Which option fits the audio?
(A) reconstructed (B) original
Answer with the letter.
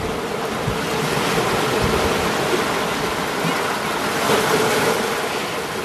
B